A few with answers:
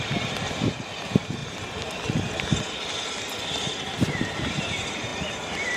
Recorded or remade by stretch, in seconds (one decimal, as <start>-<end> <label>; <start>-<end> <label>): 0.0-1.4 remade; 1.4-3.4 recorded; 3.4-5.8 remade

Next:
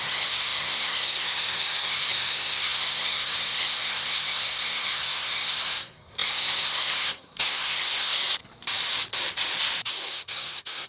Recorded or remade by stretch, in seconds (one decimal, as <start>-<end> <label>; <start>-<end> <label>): 0.0-8.2 remade; 8.2-9.9 recorded; 9.9-10.9 remade

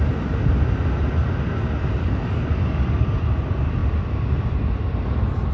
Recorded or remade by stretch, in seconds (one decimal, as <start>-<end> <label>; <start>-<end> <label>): 0.0-2.0 recorded; 2.0-3.2 remade; 3.2-5.5 recorded